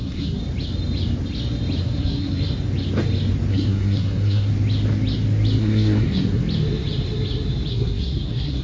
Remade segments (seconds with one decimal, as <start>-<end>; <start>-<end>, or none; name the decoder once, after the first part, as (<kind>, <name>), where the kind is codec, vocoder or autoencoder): 0.0-0.4 (codec, SNAC); 1.8-2.4; 3.5-4.5; 5.6-6.4; 7.7-8.6